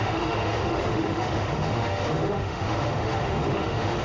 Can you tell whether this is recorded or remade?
remade